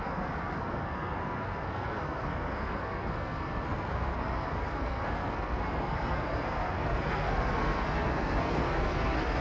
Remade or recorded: remade